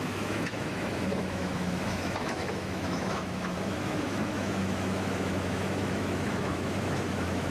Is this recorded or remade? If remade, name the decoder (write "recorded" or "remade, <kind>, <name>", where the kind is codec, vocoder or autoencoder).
remade, autoencoder, DAC-VAE